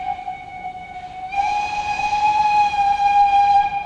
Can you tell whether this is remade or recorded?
remade